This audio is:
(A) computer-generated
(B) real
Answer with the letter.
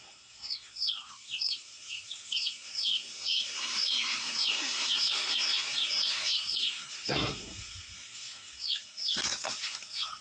A